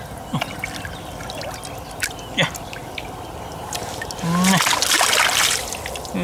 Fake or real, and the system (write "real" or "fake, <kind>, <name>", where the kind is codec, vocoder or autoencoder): real